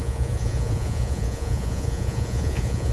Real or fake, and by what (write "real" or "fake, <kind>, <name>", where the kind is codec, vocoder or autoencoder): fake, vocoder, Vocos